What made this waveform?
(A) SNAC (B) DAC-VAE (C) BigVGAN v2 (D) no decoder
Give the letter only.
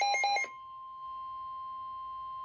D